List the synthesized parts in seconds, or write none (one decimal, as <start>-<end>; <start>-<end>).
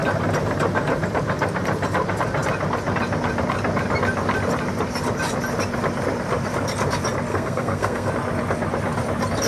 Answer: 7.3-8.1